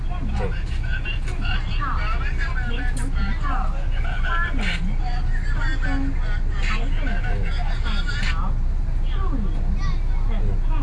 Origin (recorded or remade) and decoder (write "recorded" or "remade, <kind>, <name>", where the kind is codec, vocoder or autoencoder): recorded